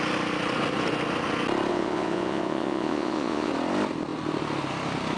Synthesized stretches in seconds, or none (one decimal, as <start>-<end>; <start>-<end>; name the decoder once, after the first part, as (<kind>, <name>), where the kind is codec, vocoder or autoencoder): 1.7-3.5 (vocoder, Vocos)